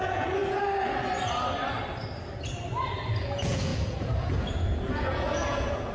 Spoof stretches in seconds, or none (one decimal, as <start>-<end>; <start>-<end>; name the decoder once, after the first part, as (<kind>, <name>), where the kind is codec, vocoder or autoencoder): 0.0-0.4 (vocoder, Vocos); 3.2-5.9